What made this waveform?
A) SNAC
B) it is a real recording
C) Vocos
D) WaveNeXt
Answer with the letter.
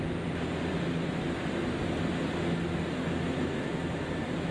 B